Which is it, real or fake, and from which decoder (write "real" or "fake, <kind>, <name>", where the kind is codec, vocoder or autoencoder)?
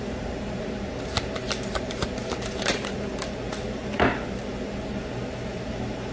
fake, vocoder, BigVGAN v2